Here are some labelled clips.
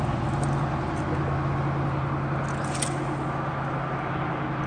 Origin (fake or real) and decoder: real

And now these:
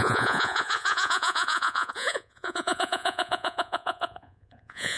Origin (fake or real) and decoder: fake, vocoder, Vocos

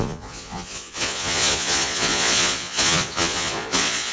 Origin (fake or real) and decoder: fake, vocoder, Vocos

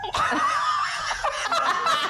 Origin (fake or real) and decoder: fake, vocoder, Vocos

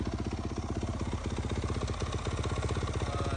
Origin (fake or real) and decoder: real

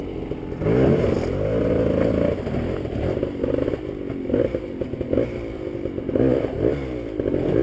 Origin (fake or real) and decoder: real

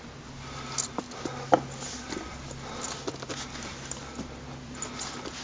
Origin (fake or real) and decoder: real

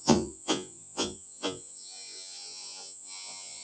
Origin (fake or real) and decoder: fake, vocoder, Vocos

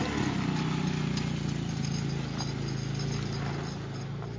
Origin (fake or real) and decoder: real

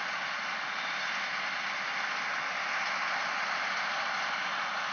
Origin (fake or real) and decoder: real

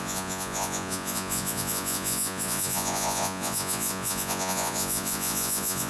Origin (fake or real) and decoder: fake, vocoder, Vocos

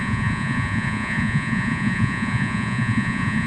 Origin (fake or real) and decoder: fake, vocoder, Vocos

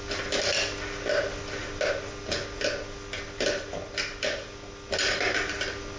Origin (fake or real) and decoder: real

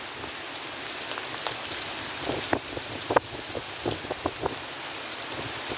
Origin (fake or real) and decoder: real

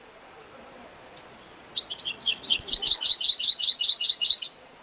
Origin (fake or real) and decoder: fake, vocoder, Vocos